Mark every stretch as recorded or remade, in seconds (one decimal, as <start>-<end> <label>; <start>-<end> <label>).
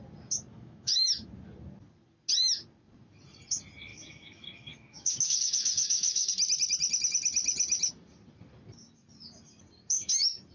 0.0-0.5 recorded; 0.5-1.3 remade; 1.3-3.9 recorded; 3.9-6.3 remade; 6.3-10.5 recorded